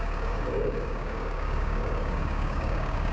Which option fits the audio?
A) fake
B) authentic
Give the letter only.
A